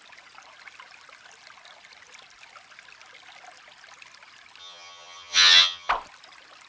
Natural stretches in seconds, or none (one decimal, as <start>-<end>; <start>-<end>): 0.0-4.6; 5.9-6.7